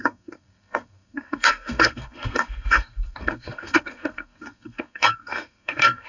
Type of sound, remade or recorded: remade